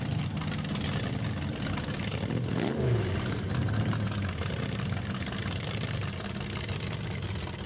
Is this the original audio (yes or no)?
yes